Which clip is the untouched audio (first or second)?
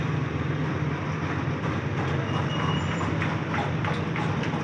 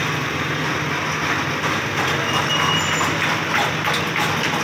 second